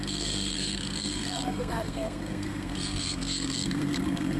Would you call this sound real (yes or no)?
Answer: no